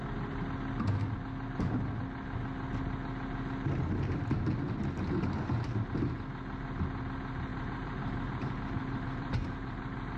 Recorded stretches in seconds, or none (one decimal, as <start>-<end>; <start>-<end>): 0.0-7.5